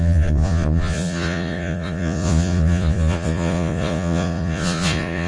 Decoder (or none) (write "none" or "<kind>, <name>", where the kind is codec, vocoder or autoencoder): vocoder, Vocos